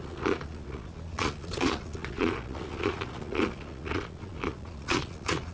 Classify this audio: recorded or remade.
remade